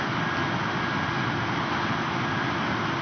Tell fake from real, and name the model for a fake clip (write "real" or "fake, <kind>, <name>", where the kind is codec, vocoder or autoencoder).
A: real